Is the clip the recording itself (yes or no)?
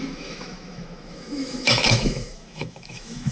no